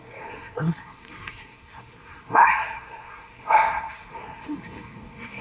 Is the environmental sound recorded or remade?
remade